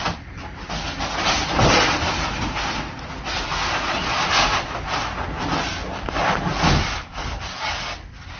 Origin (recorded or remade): recorded